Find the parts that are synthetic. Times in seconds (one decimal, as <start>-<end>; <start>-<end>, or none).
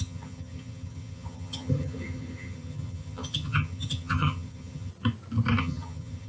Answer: 0.0-4.9; 5.6-6.3